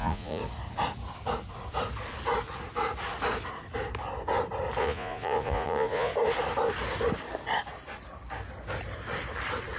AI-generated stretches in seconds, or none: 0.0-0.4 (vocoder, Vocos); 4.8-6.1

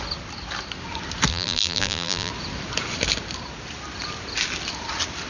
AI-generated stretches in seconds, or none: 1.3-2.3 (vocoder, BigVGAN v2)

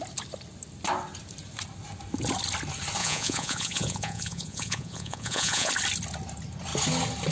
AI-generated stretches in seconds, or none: 3.0-5.7 (vocoder, Vocos)

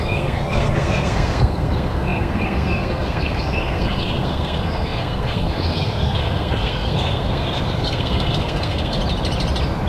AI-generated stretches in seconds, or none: 0.0-9.0 (codec, SNAC)

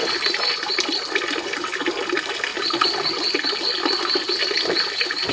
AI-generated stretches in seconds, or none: none

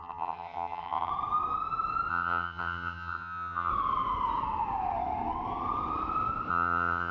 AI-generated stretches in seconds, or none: 0.0-1.1 (vocoder, HiFi-GAN); 2.1-3.7; 6.5-7.1